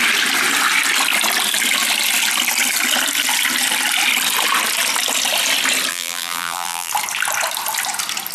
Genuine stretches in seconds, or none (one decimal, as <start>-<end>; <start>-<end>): 0.0-5.9; 6.9-8.3